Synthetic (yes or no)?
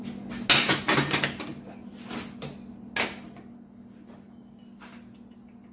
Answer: no